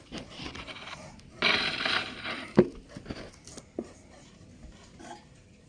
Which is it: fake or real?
real